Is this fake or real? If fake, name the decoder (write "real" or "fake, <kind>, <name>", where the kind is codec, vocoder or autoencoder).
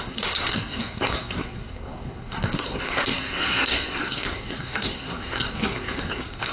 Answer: fake, codec, SNAC